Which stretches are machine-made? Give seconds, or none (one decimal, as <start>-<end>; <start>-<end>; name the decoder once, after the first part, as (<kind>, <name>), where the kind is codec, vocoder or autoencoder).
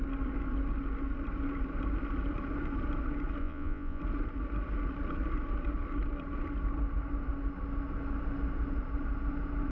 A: 3.4-4.0 (vocoder, Vocos)